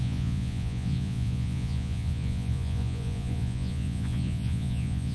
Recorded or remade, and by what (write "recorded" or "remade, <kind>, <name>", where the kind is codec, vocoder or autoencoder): remade, vocoder, Vocos